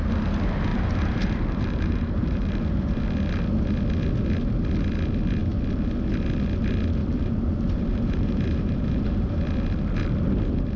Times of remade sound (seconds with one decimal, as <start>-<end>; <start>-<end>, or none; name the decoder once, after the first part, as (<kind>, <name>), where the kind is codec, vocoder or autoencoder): 0.7-3.0 (vocoder, BigVGAN v2); 7.0-9.4